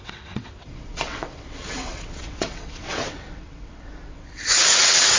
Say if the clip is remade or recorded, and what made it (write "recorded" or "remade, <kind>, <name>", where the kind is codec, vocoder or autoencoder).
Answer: remade, vocoder, WaveNeXt